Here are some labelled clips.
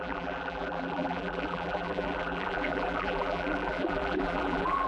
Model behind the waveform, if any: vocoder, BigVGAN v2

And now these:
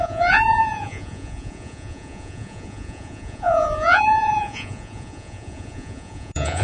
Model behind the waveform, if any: vocoder, Vocos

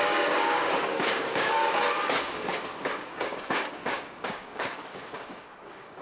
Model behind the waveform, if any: codec, DAC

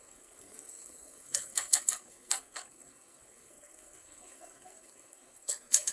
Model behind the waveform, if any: codec, SNAC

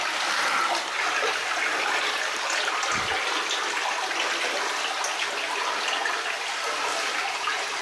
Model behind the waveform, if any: none